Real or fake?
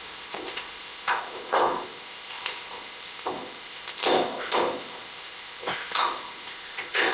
fake